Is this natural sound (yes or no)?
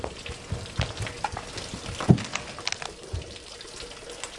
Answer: yes